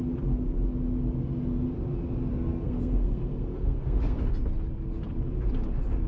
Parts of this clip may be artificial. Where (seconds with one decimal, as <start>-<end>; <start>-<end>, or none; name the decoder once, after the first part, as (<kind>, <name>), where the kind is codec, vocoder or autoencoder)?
2.3-4.3 (codec, SNAC)